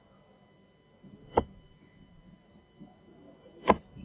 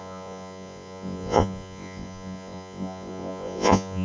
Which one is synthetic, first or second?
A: second